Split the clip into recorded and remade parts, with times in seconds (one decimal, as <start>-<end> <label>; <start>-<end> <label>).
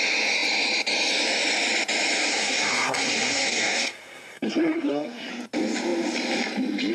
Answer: 0.0-2.3 recorded; 2.3-5.3 remade; 5.3-6.9 recorded